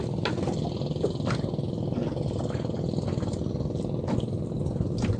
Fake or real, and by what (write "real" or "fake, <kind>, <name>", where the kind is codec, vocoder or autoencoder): real